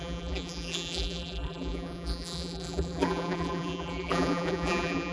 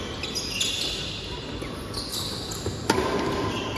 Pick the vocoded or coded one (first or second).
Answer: first